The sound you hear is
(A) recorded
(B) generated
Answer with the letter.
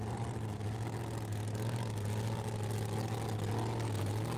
A